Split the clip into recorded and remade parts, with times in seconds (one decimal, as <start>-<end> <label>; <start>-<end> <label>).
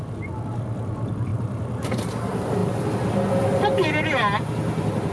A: 0.0-1.3 recorded; 1.3-2.0 remade; 2.0-5.1 recorded